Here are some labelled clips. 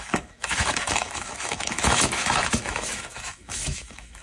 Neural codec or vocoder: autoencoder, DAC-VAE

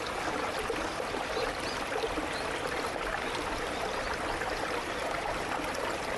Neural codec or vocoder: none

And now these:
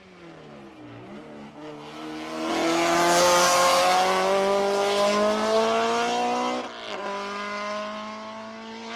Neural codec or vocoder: none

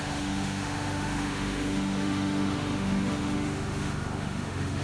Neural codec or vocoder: autoencoder, DAC-VAE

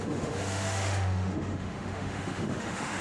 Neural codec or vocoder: autoencoder, DAC-VAE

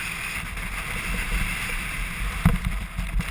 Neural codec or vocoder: none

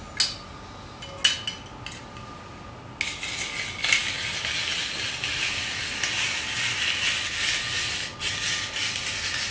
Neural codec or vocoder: none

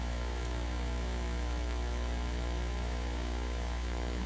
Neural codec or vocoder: autoencoder, DAC-VAE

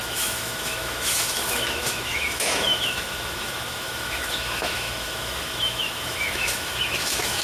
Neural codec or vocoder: autoencoder, DAC-VAE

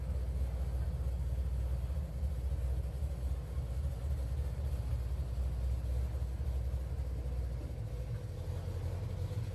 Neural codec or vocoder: none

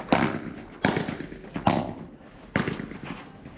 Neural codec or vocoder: none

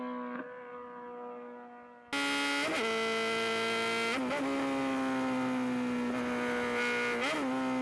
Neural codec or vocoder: none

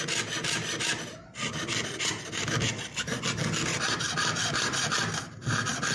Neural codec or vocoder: none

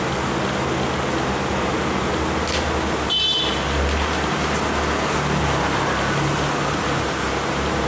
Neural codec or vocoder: none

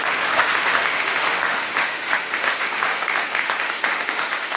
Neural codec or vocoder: autoencoder, DAC-VAE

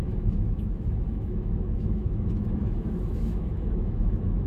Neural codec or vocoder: autoencoder, DAC-VAE